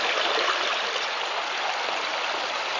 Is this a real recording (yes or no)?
yes